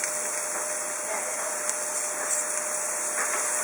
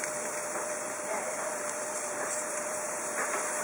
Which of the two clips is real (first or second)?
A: first